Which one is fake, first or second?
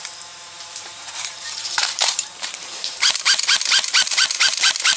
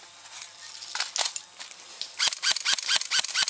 first